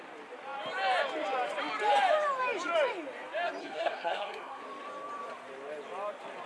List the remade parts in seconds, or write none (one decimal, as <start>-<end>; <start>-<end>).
3.6-4.6